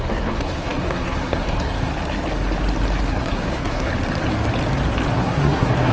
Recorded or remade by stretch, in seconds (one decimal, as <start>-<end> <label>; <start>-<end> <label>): 0.0-1.9 remade; 1.9-3.1 recorded; 3.1-3.9 remade; 3.9-5.1 recorded; 5.1-5.9 remade